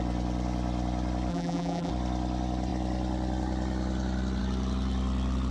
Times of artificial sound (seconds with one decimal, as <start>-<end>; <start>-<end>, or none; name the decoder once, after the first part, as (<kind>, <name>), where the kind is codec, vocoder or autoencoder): 1.3-1.9 (vocoder, BigVGAN v2)